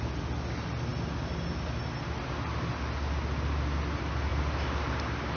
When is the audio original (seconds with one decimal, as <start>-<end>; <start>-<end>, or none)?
0.0-5.4